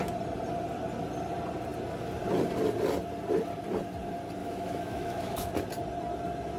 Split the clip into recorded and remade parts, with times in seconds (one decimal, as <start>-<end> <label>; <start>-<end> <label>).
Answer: 0.0-4.4 recorded; 4.4-5.5 remade; 5.5-6.6 recorded